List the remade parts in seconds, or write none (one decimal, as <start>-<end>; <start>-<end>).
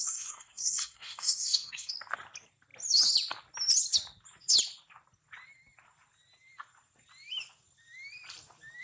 0.0-1.9